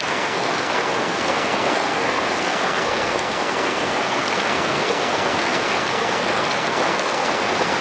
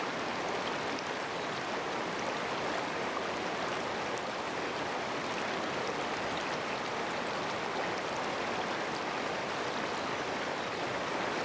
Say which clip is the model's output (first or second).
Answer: first